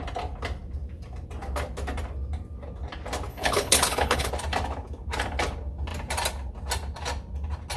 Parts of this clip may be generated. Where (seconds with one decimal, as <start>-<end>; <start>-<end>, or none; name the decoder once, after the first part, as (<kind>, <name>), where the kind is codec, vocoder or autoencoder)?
3.3-4.3 (codec, HILCodec)